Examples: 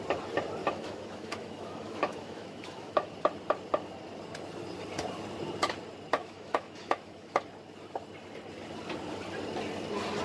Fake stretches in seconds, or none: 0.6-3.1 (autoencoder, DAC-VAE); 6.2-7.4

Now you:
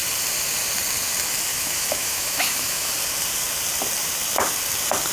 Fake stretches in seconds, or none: 1.5-2.9 (autoencoder, DAC-VAE)

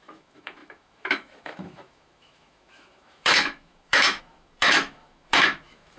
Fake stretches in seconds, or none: 0.0-6.0 (autoencoder, DAC-VAE)

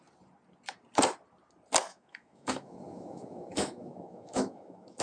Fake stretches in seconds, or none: 1.9-5.0 (autoencoder, DAC-VAE)

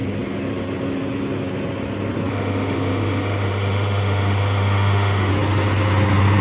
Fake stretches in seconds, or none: 2.3-5.3 (autoencoder, DAC-VAE)

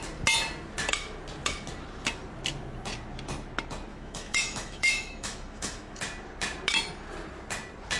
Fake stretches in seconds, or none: 3.9-6.0 (autoencoder, DAC-VAE)

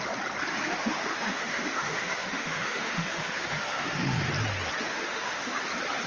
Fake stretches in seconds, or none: 0.6-4.3 (autoencoder, DAC-VAE); 4.9-5.6

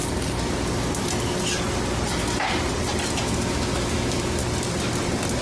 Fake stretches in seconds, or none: 3.2-4.4 (autoencoder, DAC-VAE)